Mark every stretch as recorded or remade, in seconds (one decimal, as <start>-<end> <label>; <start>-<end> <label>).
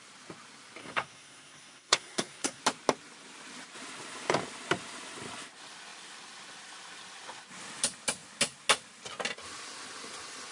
0.0-0.8 recorded; 0.8-2.6 remade; 2.6-10.5 recorded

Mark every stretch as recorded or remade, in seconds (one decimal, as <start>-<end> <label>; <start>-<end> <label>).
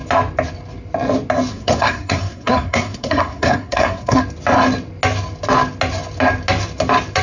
0.0-1.5 recorded; 1.5-4.2 remade; 4.2-7.2 recorded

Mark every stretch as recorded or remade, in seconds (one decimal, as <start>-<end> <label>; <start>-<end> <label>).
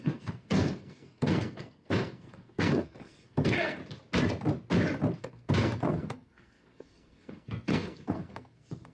0.0-3.8 remade; 3.8-5.2 recorded; 5.2-8.9 remade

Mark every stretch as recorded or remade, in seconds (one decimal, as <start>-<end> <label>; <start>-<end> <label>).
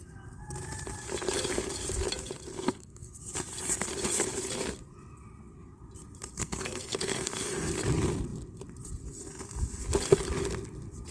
0.0-2.5 recorded; 2.5-3.2 remade; 3.2-6.4 recorded; 6.4-7.7 remade; 7.7-11.1 recorded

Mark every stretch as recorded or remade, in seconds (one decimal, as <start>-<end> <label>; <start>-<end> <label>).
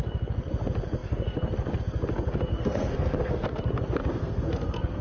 0.0-2.5 recorded; 2.5-3.6 remade; 3.6-4.1 recorded; 4.1-5.0 remade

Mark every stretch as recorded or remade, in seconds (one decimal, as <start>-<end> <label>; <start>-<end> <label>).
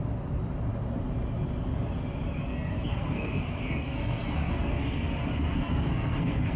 0.0-2.5 recorded; 2.5-6.6 remade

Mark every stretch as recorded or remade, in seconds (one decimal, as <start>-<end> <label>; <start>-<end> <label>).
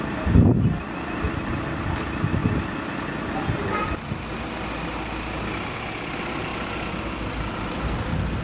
0.0-8.4 recorded